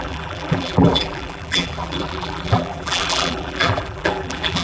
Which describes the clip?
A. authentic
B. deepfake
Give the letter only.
B